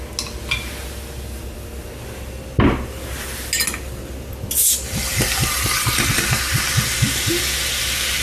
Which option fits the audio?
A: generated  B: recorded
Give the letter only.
B